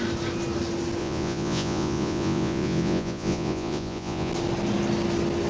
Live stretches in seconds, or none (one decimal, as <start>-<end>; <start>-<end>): 0.0-1.0; 4.3-5.5